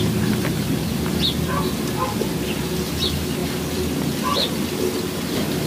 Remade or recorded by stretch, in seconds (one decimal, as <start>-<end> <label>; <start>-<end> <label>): 0.0-5.7 recorded